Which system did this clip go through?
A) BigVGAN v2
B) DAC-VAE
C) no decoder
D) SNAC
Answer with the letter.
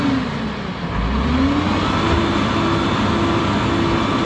C